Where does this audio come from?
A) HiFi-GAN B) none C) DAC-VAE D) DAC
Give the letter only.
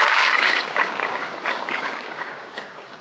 D